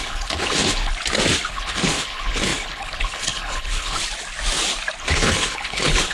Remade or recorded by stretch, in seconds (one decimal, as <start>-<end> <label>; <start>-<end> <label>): 0.0-0.9 remade; 0.9-1.5 recorded; 1.5-4.0 remade; 4.0-5.0 recorded; 5.0-6.1 remade